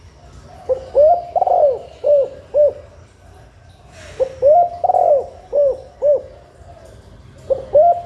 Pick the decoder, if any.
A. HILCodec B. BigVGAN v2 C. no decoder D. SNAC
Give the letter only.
C